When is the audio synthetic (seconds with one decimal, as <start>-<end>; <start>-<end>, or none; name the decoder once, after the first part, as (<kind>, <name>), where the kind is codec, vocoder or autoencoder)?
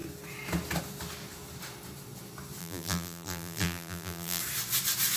2.6-4.4 (vocoder, BigVGAN v2)